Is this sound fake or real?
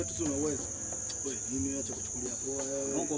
real